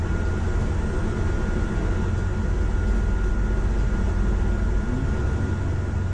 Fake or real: real